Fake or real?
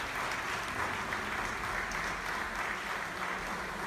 real